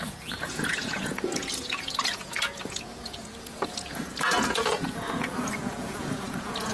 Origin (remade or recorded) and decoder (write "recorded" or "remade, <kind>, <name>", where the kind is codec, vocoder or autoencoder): remade, vocoder, Vocos